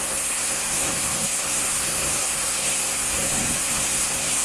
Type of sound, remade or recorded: remade